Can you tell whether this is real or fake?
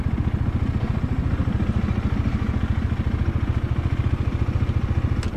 real